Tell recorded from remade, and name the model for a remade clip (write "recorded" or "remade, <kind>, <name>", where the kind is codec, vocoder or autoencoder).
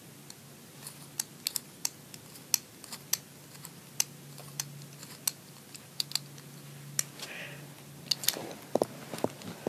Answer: recorded